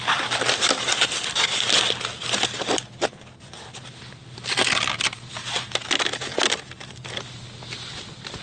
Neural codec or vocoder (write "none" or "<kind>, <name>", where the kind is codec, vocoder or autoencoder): none